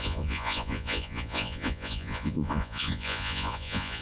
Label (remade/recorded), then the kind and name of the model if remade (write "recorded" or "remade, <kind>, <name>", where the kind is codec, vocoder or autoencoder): remade, vocoder, Vocos